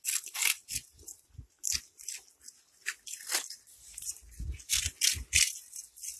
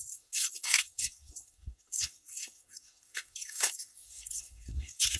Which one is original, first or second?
first